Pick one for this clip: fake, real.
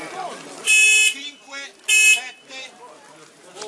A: real